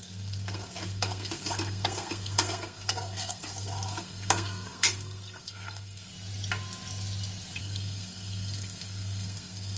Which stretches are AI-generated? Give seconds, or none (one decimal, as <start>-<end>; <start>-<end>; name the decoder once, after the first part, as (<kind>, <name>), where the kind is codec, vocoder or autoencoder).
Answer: 0.0-6.1 (codec, SNAC); 7.6-9.8